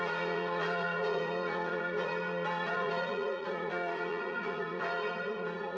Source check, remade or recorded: remade